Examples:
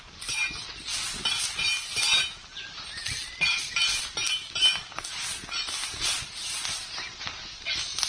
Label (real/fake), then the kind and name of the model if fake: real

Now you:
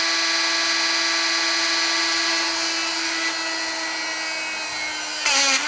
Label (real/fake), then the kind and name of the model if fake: real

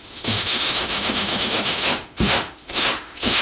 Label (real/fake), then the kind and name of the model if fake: fake, autoencoder, DAC-VAE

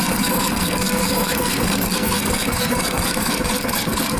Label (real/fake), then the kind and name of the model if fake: fake, codec, SNAC